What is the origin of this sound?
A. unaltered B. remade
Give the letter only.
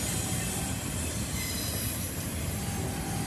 B